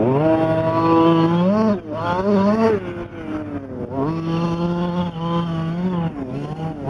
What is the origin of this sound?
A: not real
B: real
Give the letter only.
B